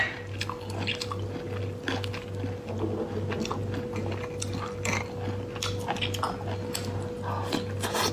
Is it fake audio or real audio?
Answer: real